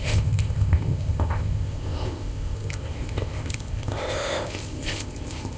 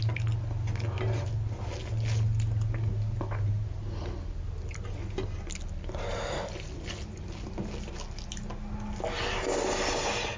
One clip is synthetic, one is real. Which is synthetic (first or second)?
first